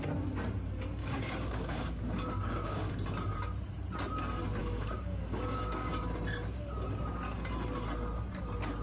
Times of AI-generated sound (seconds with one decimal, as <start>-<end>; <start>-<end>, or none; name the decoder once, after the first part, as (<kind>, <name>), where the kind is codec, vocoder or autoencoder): 1.0-2.9 (codec, DAC); 4.6-5.9